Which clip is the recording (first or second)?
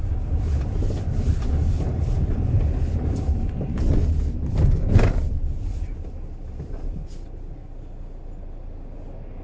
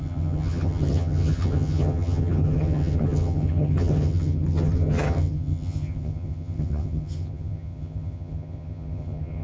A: first